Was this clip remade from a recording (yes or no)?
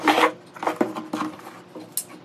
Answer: no